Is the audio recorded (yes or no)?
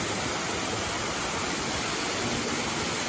yes